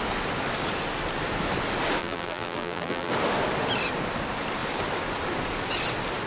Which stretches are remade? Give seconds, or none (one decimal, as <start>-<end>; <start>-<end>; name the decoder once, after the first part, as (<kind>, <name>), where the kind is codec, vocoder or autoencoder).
2.0-3.1 (vocoder, BigVGAN v2)